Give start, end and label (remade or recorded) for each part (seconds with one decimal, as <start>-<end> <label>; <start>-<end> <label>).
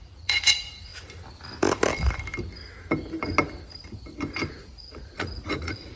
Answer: 0.0-0.9 remade; 0.9-4.5 recorded; 4.5-6.0 remade